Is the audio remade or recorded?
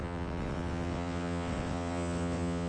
remade